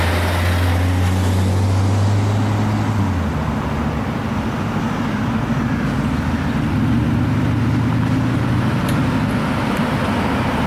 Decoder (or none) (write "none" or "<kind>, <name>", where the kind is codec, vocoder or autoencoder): none